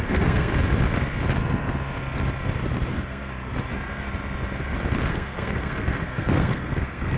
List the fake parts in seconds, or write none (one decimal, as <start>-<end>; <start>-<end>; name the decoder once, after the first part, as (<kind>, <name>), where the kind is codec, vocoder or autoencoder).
0.0-0.5 (codec, SNAC); 2.9-3.3; 5.1-7.2

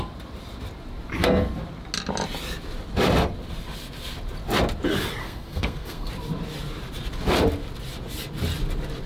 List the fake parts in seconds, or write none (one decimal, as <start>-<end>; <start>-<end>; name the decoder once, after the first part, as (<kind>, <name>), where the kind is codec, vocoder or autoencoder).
5.2-6.1 (codec, SNAC)